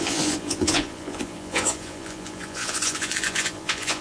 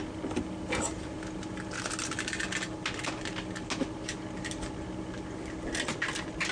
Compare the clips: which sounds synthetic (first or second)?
first